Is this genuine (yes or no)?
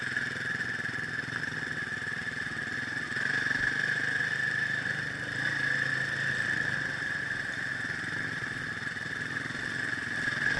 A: yes